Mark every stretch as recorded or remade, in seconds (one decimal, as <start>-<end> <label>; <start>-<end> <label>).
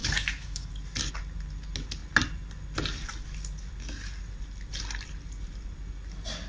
0.0-0.7 remade; 0.7-6.5 recorded